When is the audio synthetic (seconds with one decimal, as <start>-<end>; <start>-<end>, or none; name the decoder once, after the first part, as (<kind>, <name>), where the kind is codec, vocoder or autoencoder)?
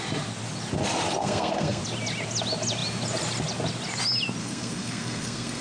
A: 1.2-1.8 (codec, SNAC); 4.4-5.6